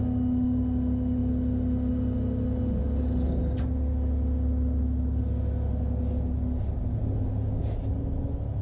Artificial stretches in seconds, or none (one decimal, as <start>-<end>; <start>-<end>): 6.9-7.6